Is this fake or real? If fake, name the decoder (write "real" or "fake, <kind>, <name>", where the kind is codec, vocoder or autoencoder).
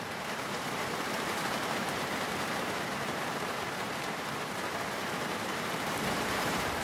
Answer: fake, vocoder, BigVGAN v2